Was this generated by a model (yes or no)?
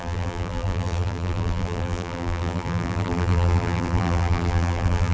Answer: yes